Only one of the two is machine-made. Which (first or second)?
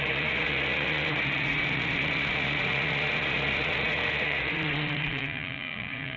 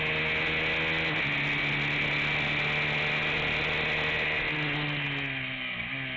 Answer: first